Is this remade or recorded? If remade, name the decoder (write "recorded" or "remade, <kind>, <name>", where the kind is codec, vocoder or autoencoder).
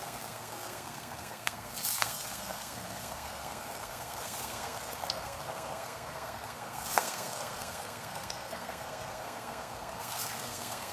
remade, codec, SNAC